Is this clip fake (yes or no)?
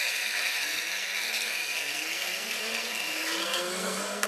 yes